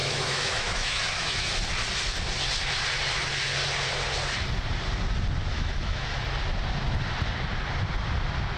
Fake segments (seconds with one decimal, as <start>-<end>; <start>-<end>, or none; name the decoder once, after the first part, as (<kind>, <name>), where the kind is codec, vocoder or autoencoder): 0.0-1.5 (autoencoder, DAC-VAE); 5.5-6.2